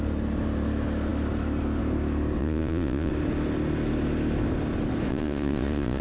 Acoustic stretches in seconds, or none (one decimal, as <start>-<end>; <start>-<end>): 0.0-2.4; 3.1-5.1